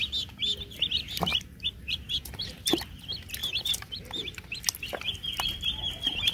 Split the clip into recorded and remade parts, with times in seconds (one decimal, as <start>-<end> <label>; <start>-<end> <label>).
0.0-1.3 recorded; 1.3-2.4 remade; 2.4-3.4 recorded; 3.4-4.6 remade; 4.6-6.3 recorded